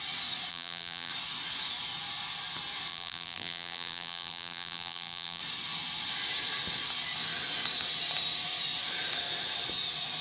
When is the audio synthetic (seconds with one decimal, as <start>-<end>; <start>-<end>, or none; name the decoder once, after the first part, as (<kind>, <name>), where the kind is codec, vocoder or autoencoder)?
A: 0.5-1.1 (vocoder, BigVGAN v2); 2.9-5.4